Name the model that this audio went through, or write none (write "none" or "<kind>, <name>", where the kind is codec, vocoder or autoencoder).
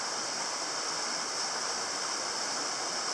none